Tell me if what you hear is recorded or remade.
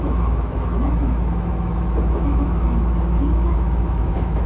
remade